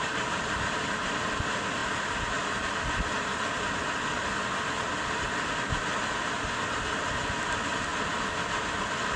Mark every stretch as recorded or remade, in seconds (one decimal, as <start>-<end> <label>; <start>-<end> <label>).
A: 0.0-9.2 recorded